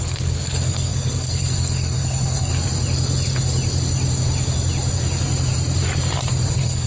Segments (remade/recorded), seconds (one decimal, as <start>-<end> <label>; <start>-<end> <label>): 0.0-2.5 remade; 2.5-6.5 recorded; 6.5-6.9 remade